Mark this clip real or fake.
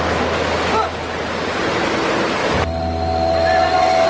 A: real